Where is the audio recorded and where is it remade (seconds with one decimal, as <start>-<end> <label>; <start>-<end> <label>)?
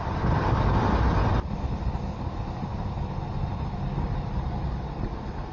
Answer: 0.0-5.5 recorded